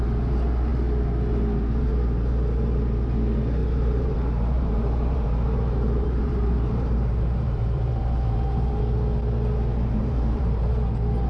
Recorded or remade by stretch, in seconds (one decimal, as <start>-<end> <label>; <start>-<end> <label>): 0.0-3.6 recorded; 3.6-8.8 remade; 8.8-9.7 recorded; 9.7-10.7 remade; 10.7-11.3 recorded